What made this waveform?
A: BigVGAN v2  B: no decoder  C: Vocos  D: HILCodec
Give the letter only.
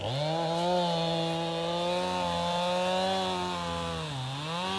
B